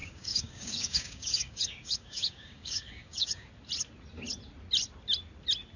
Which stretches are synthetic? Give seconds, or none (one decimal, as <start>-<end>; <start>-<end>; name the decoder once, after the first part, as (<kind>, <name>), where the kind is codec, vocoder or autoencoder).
0.0-3.5 (codec, DAC)